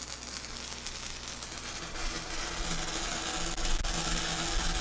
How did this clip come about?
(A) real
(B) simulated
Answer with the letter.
A